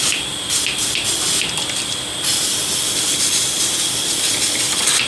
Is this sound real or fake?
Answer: real